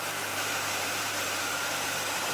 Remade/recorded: remade